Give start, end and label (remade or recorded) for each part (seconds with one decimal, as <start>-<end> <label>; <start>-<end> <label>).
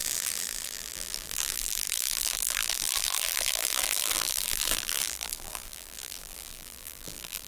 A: 0.0-7.5 remade